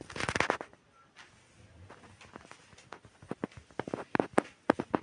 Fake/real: real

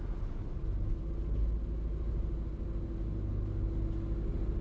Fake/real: real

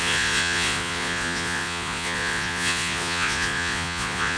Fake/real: fake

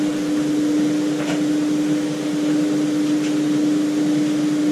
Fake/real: real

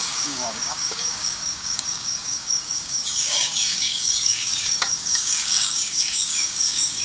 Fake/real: fake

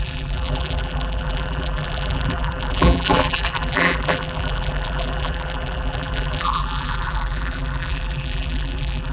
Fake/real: fake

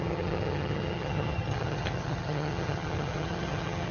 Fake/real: fake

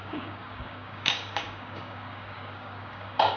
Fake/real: fake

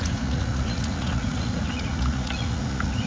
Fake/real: fake